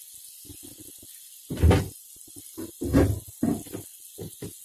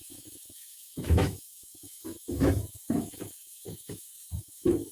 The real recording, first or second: first